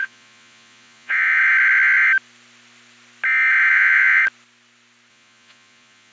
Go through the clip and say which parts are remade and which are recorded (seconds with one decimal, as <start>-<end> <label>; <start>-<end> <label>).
0.0-1.4 remade; 1.4-3.7 recorded; 3.7-4.2 remade; 4.2-5.1 recorded; 5.1-6.1 remade